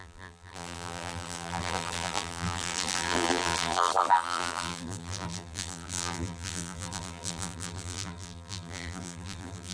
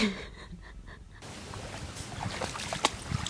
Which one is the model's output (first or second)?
first